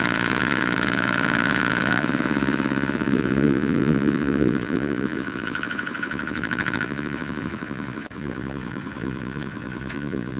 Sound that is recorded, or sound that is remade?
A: remade